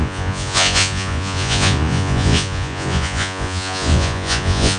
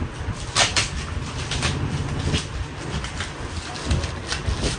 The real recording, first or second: second